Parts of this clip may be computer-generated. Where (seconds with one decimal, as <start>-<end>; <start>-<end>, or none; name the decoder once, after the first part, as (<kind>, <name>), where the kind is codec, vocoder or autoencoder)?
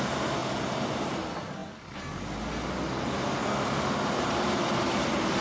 none